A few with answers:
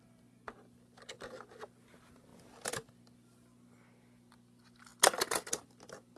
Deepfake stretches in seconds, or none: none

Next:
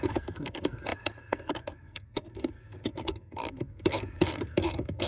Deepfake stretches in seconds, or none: 0.0-5.1 (codec, SNAC)

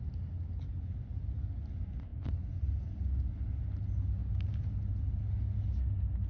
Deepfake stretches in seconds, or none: none

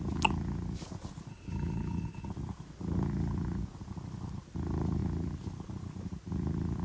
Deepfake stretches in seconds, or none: 1.3-2.3 (codec, HILCodec)

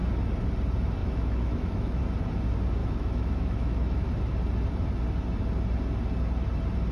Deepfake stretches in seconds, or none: 1.0-2.0 (autoencoder, DAC-VAE); 2.8-4.1

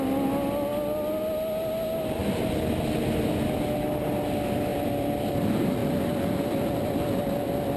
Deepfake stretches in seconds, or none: 4.7-5.3 (vocoder, BigVGAN v2); 5.8-7.2